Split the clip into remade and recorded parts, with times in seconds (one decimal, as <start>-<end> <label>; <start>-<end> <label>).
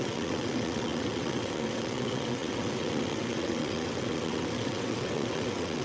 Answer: 0.0-5.8 remade